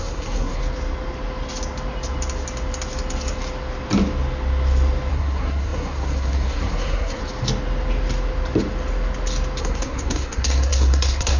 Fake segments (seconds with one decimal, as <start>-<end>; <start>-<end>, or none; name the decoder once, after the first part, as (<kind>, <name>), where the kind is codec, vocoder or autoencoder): 0.0-0.6 (codec, SNAC); 5.1-7.2; 9.6-11.4